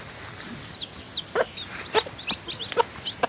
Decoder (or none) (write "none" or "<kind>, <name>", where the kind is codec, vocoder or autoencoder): none